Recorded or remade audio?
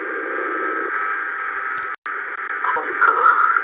recorded